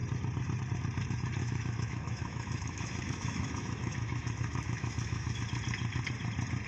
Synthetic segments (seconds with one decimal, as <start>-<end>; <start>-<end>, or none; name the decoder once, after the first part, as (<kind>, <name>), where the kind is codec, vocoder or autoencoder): 1.4-5.4 (autoencoder, DAC-VAE)